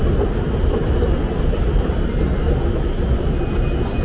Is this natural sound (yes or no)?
yes